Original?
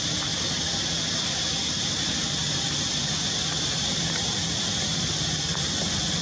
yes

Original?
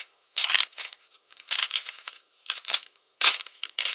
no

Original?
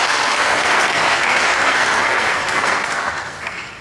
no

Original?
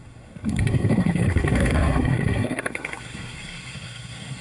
no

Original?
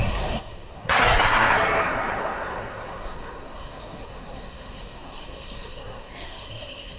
no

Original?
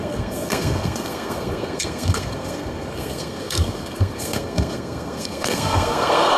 no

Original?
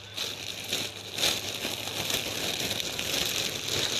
yes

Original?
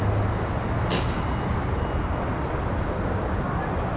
yes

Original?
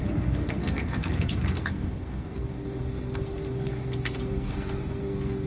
no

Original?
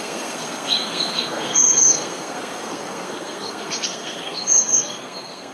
no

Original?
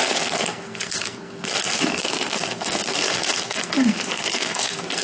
no